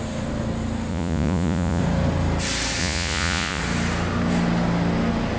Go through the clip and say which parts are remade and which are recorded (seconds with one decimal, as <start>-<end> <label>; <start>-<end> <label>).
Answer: 0.0-0.9 recorded; 0.9-1.8 remade; 1.8-2.8 recorded; 2.8-3.6 remade; 3.6-5.4 recorded